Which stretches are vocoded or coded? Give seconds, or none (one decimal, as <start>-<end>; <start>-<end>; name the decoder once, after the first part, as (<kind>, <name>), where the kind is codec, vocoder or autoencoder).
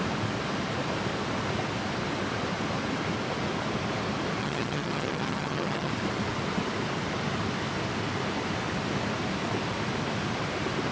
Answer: 4.4-5.9 (vocoder, HiFi-GAN)